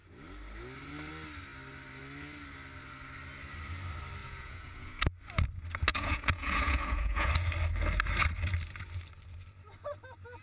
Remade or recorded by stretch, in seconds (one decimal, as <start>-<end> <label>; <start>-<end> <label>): 0.0-4.2 recorded; 4.2-5.0 remade; 5.0-5.9 recorded; 5.9-7.3 remade; 7.3-10.4 recorded